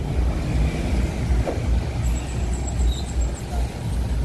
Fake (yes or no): no